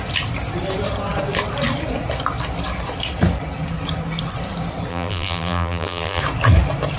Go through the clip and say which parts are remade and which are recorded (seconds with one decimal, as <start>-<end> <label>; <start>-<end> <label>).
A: 0.0-4.9 recorded; 4.9-6.2 remade; 6.2-7.0 recorded